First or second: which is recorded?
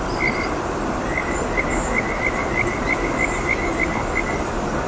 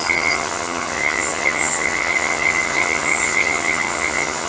first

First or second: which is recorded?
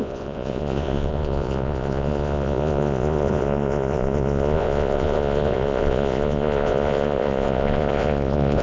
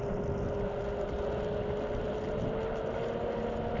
second